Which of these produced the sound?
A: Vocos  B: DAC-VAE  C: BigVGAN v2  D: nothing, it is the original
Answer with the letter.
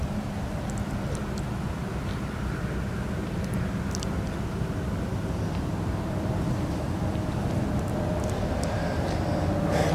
D